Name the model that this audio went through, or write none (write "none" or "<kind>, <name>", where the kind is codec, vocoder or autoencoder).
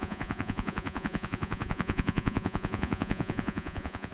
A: vocoder, Vocos